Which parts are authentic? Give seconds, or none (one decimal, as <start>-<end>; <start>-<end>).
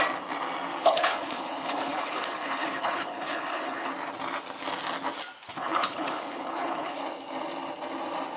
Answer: 0.0-0.8; 3.9-5.5; 7.0-8.4